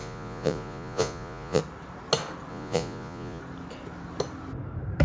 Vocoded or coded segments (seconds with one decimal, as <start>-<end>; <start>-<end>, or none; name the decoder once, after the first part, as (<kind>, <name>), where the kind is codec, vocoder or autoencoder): 0.0-1.6 (vocoder, Vocos); 2.5-3.4